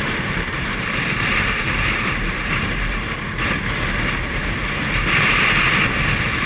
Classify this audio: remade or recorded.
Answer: remade